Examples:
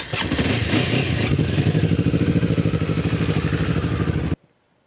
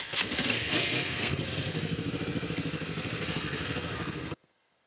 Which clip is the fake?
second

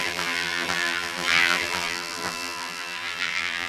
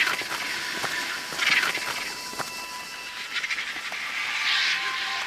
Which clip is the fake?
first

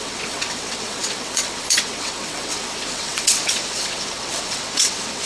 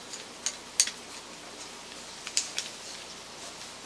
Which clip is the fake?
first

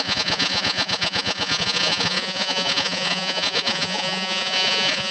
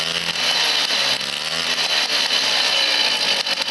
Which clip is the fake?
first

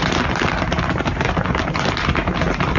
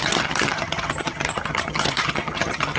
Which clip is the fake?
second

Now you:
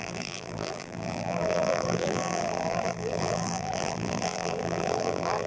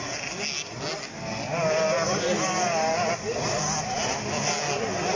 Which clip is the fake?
first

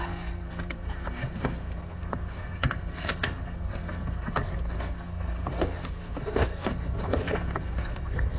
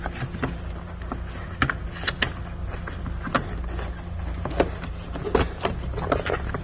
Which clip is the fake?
first